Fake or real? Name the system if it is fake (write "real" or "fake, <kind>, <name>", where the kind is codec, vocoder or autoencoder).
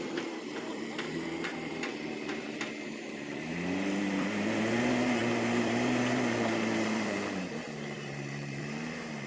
fake, vocoder, BigVGAN v2